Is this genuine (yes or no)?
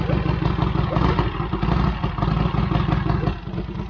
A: yes